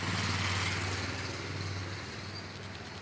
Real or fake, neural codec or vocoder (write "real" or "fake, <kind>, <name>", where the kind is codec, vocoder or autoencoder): real